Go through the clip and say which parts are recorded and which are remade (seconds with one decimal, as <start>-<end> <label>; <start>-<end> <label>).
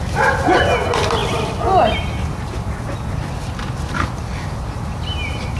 0.0-5.6 recorded